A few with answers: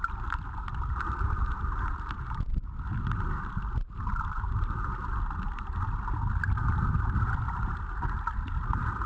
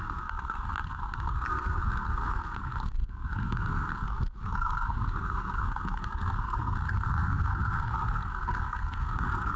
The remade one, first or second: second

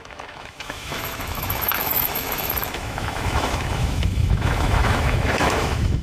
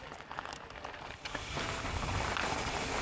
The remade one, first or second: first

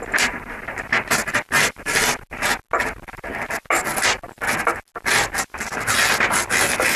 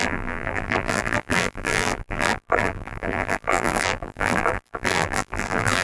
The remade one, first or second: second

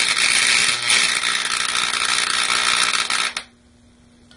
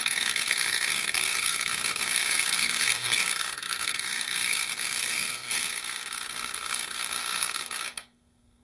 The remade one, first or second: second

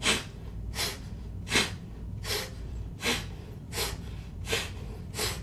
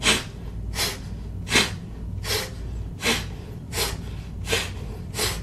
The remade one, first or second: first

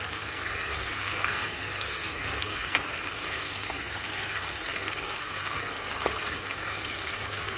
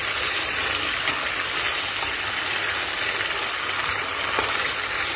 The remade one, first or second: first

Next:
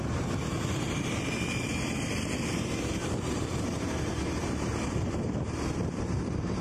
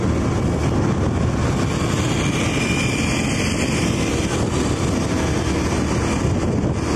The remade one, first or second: first